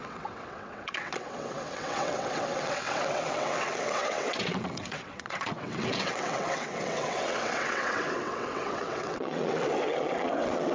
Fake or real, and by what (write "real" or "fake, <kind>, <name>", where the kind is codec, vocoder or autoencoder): fake, vocoder, WaveNeXt